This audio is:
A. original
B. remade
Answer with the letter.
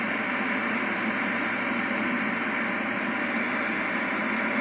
A